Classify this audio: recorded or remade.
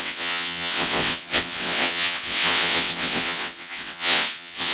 remade